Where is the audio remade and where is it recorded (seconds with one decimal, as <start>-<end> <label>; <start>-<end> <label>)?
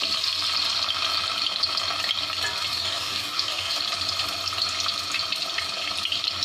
0.0-2.7 recorded; 2.7-3.8 remade; 3.8-6.4 recorded